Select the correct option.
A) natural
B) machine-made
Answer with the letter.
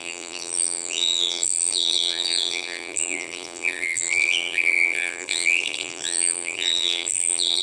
B